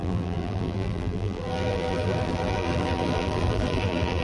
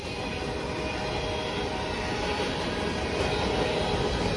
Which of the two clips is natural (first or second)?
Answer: second